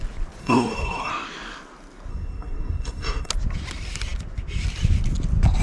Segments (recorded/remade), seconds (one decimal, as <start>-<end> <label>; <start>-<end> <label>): 0.0-0.4 recorded; 0.4-1.1 remade; 1.1-2.1 recorded; 2.1-3.3 remade; 3.3-5.6 recorded